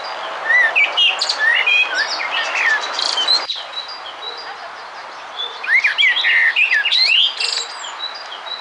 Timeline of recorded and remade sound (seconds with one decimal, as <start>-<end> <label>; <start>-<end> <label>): 0.0-8.6 recorded